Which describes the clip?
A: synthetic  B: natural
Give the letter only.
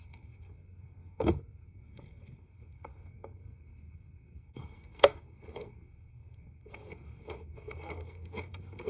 A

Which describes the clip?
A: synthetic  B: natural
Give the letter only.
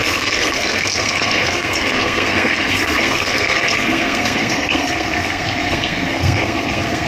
A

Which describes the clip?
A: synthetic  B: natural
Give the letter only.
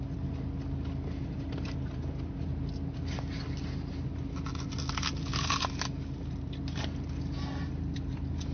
B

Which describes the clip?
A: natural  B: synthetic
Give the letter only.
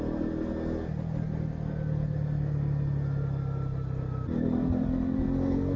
A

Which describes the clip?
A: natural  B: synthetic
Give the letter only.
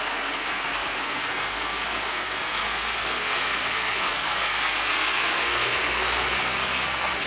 B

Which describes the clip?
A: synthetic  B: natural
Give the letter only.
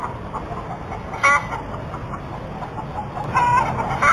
B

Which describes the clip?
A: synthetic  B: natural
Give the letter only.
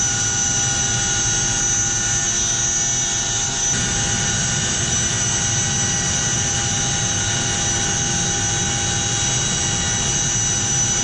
B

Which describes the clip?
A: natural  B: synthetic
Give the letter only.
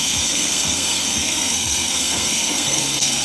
B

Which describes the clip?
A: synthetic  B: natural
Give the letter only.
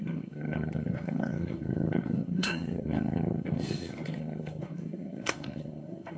A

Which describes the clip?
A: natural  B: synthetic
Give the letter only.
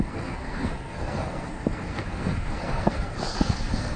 B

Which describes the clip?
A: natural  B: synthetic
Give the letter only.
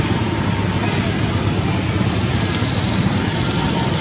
A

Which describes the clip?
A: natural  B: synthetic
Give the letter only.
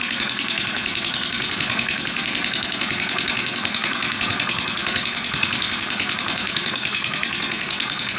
B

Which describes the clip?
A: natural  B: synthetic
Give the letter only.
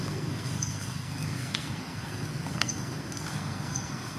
B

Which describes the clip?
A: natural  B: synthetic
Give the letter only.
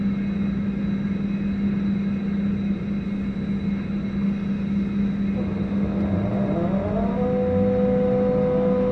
A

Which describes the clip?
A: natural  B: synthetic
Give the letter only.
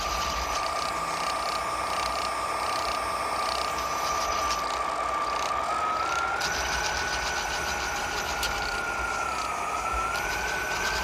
A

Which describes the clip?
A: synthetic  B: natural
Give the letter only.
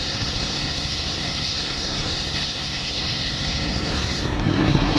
A